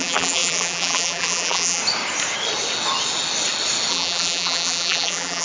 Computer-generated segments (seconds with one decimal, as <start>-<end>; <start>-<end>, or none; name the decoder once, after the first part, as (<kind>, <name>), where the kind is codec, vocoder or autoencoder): 0.0-1.8 (vocoder, BigVGAN v2); 3.9-5.4